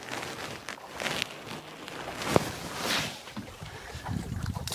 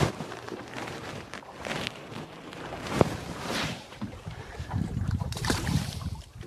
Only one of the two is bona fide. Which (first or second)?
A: first